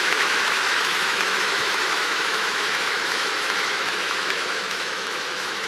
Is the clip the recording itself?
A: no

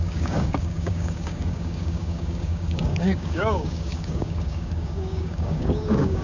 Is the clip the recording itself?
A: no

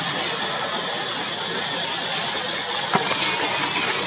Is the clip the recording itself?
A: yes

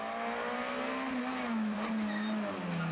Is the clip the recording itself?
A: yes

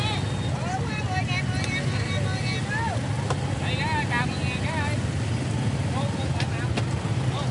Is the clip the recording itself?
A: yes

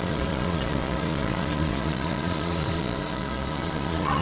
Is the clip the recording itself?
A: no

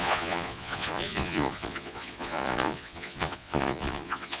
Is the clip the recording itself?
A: no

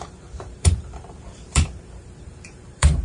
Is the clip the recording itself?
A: no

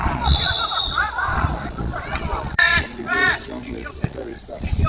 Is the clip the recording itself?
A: no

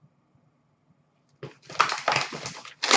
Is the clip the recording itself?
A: yes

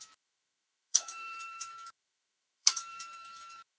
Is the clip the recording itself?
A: no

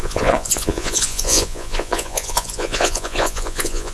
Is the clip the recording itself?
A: no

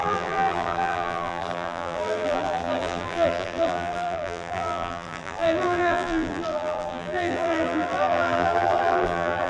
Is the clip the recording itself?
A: no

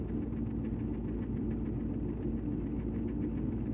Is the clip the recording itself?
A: yes